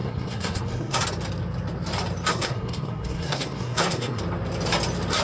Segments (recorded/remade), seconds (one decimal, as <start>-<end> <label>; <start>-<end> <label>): 0.0-1.0 remade; 1.0-2.3 recorded; 2.3-4.2 remade; 4.2-5.2 recorded